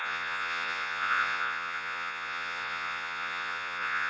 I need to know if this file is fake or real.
fake